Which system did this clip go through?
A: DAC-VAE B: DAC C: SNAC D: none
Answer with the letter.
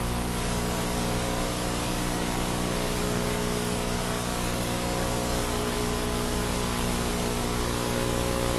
B